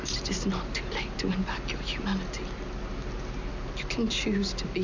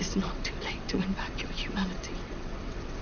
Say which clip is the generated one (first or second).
second